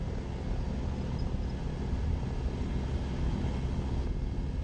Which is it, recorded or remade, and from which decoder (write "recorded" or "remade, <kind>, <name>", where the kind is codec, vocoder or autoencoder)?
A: recorded